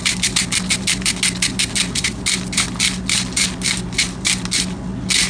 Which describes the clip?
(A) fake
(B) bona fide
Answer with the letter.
B